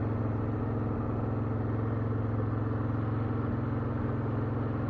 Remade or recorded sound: recorded